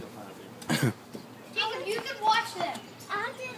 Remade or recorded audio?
recorded